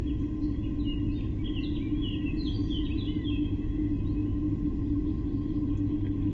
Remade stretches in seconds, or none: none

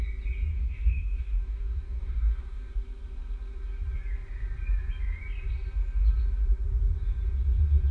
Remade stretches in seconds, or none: 0.5-2.7 (codec, DAC)